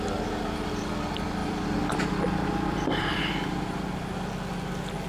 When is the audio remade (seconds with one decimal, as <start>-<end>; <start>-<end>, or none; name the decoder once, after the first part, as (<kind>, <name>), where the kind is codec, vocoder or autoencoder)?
none